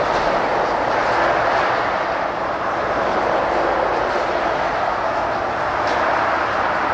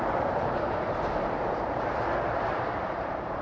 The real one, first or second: first